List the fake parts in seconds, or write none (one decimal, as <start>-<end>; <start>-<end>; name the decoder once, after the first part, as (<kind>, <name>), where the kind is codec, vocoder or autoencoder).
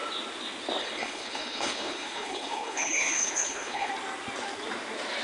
0.8-3.9 (codec, HILCodec)